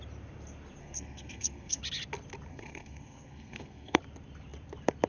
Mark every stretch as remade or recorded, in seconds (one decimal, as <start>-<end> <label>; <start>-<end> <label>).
0.0-0.8 recorded; 0.8-1.8 remade; 1.8-2.5 recorded; 2.5-4.0 remade; 4.0-5.1 recorded